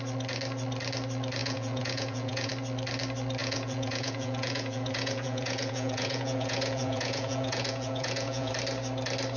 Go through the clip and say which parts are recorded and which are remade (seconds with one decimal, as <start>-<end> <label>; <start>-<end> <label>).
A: 0.0-1.4 recorded; 1.4-2.5 remade; 2.5-3.4 recorded; 3.4-8.5 remade; 8.5-9.4 recorded